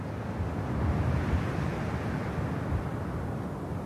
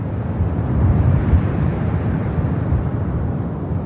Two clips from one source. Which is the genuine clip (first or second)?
first